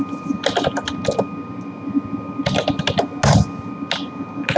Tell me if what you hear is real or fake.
real